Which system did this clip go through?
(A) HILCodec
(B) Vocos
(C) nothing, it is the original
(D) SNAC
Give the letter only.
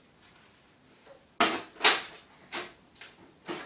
C